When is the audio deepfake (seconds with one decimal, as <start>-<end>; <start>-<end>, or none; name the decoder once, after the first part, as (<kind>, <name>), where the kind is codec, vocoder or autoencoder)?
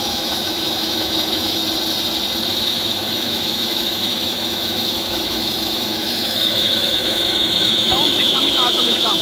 0.0-1.6 (autoencoder, DAC-VAE); 2.5-9.2